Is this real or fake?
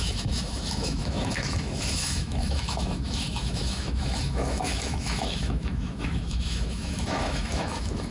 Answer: fake